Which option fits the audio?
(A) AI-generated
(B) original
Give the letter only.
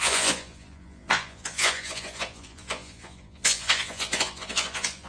A